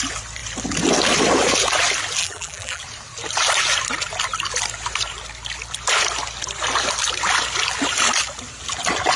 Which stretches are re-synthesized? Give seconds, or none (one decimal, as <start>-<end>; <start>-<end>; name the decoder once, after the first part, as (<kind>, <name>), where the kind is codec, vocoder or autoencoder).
2.2-2.8 (vocoder, BigVGAN v2)